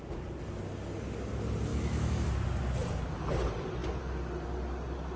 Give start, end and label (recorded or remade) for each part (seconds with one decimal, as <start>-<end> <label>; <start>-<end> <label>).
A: 0.0-1.7 recorded; 1.7-2.3 remade; 2.3-5.2 recorded